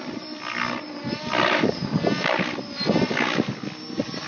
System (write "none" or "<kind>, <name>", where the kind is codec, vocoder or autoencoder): none